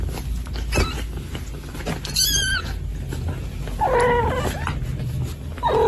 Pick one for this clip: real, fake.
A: real